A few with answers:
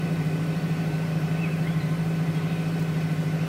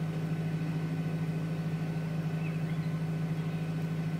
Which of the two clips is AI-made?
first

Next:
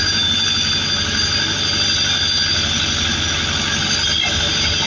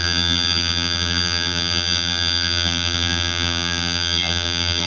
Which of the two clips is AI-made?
second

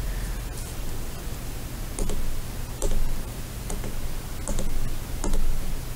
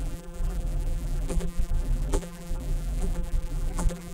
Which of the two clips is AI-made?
second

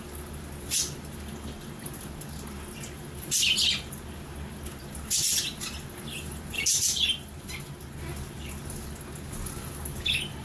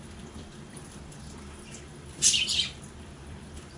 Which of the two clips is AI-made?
second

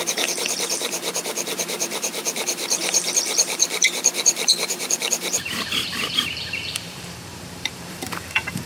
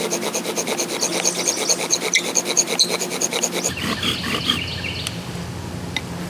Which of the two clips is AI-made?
first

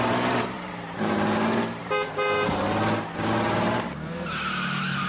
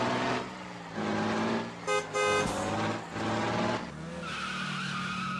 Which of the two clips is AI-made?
first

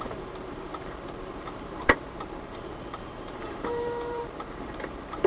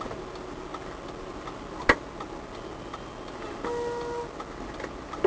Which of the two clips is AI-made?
first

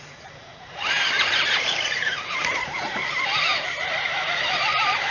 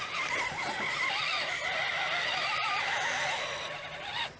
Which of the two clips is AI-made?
first